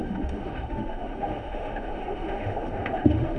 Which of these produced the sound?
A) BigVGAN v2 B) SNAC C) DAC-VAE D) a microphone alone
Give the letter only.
C